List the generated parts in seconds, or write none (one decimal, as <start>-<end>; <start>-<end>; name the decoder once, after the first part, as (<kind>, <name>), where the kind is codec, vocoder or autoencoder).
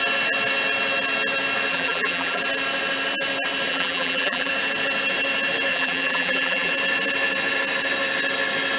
1.7-2.4 (vocoder, BigVGAN v2); 3.7-4.5; 5.7-6.7